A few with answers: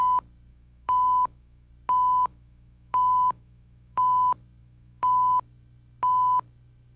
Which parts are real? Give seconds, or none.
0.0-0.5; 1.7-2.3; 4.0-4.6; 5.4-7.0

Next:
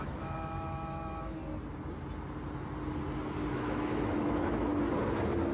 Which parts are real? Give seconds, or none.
1.4-3.5; 4.7-5.5

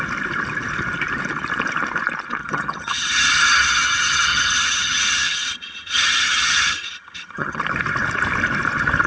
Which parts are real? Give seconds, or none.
0.0-2.4; 7.6-9.1